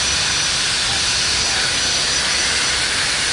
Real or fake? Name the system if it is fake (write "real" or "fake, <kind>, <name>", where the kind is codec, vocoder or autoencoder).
fake, vocoder, BigVGAN v2